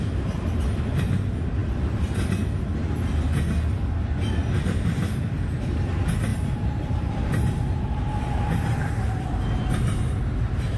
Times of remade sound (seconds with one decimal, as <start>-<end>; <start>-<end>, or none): 6.3-7.8